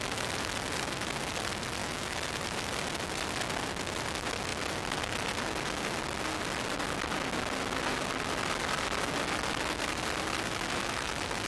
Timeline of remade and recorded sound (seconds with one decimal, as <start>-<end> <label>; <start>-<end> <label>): 0.0-1.8 recorded; 1.8-2.3 remade; 2.3-10.5 recorded; 10.5-11.1 remade; 11.1-11.5 recorded